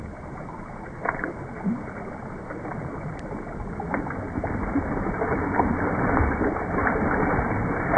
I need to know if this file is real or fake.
real